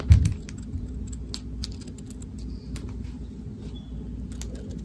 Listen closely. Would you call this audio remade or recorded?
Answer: recorded